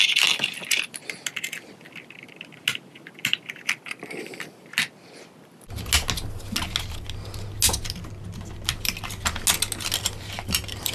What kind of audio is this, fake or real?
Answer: real